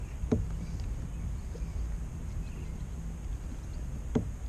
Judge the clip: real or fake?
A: real